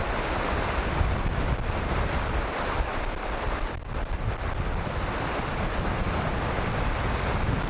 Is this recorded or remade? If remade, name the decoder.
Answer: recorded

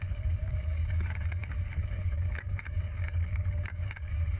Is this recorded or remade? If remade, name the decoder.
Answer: remade, codec, DAC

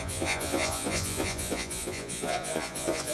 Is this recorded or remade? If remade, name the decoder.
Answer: remade, vocoder, Vocos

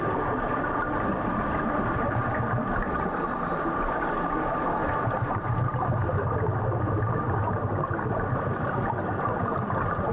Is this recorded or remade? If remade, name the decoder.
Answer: recorded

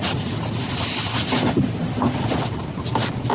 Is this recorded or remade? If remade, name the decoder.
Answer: recorded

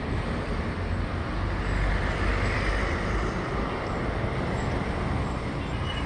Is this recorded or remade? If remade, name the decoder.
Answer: recorded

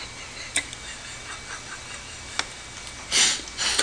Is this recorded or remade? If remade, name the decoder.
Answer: recorded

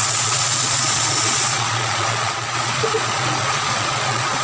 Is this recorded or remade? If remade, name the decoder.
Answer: remade, vocoder, Vocos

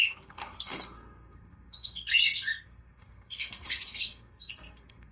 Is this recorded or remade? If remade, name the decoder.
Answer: remade, codec, SNAC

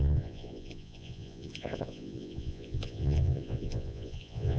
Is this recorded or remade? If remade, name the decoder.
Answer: remade, vocoder, Vocos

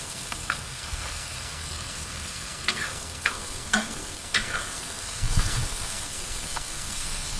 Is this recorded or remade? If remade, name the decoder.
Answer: remade, codec, SNAC